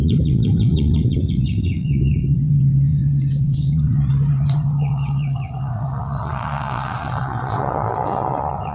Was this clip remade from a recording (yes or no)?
yes